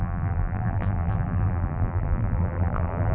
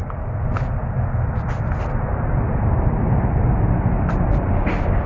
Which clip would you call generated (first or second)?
first